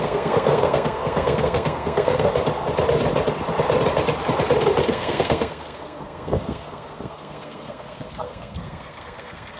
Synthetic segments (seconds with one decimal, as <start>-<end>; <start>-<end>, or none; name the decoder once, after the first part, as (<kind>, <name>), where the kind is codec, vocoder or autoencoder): 0.0-2.3 (codec, SNAC); 4.9-9.6